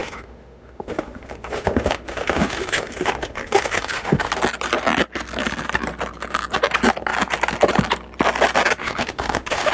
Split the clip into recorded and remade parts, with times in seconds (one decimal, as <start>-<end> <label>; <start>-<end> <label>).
0.0-4.3 remade; 4.3-8.8 recorded; 8.8-9.7 remade